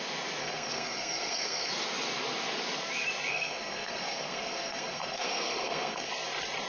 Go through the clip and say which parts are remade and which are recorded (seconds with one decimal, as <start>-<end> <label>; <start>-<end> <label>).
0.0-0.4 recorded; 0.4-1.7 remade; 1.7-3.3 recorded; 3.3-6.1 remade; 6.1-6.7 recorded